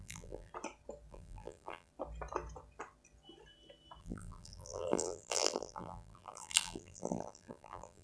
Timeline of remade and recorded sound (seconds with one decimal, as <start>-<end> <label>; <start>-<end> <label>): 0.0-0.5 remade; 0.5-1.1 recorded; 1.1-1.9 remade; 1.9-4.0 recorded; 4.0-8.0 remade